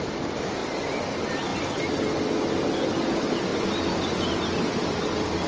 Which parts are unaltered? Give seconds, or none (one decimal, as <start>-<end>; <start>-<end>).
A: 0.0-5.5